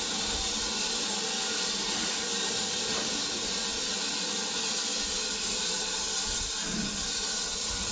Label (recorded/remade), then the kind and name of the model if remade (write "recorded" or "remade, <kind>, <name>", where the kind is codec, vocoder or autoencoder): recorded